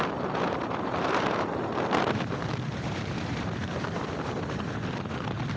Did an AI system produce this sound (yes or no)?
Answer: yes